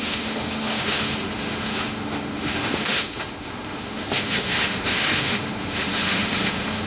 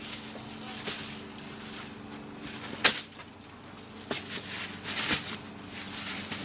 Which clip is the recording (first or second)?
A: second